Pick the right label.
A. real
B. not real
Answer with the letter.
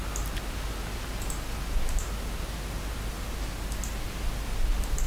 A